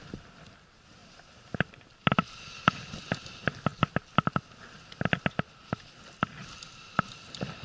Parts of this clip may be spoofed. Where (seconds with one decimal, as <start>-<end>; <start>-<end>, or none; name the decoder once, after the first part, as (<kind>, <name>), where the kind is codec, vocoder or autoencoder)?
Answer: 1.0-1.7 (vocoder, BigVGAN v2)